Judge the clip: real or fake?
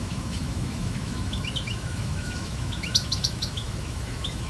fake